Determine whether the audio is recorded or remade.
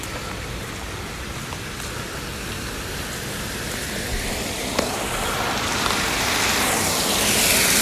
recorded